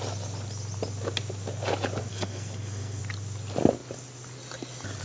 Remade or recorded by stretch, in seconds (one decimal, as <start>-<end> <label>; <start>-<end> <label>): 0.0-2.1 recorded; 2.1-3.0 remade; 3.0-5.0 recorded